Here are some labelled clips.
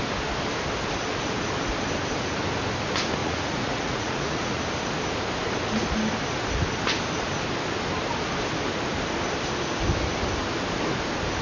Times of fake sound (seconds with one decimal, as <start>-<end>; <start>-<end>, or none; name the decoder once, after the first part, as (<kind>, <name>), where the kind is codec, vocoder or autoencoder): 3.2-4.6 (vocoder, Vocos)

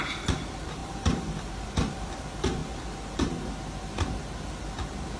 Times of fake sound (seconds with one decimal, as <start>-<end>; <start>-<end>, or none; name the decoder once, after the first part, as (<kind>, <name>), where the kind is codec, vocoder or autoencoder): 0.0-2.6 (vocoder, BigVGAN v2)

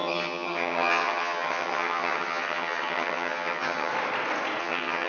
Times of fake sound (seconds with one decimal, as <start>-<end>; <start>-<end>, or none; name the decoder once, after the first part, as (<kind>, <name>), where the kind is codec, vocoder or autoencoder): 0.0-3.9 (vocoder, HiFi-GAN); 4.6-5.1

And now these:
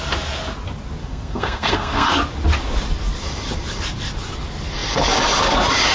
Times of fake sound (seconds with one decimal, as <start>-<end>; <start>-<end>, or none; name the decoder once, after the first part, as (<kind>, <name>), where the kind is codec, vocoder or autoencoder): 1.0-2.1 (codec, SNAC)